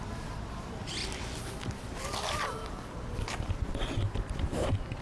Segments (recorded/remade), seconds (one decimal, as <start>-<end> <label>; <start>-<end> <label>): 0.0-5.0 recorded